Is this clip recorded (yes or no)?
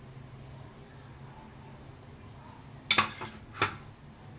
yes